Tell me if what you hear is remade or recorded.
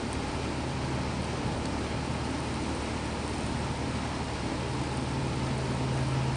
recorded